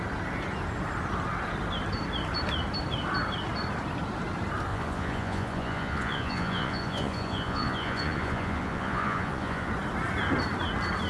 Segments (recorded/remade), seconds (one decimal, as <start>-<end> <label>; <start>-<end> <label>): 0.0-4.7 recorded; 4.7-9.7 remade; 9.7-11.1 recorded

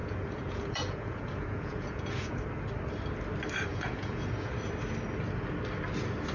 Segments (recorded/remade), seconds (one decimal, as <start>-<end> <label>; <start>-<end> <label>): 0.0-2.4 remade; 2.4-3.7 recorded; 3.7-4.5 remade; 4.5-6.3 recorded

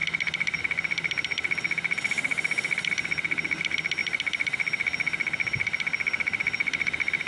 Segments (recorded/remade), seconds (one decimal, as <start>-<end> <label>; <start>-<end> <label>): 0.0-7.3 recorded